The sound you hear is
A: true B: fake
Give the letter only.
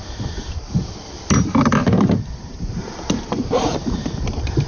B